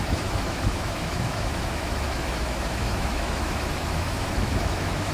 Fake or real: fake